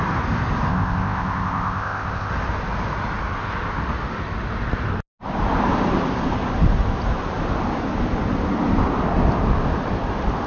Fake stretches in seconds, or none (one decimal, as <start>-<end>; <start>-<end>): 0.7-2.3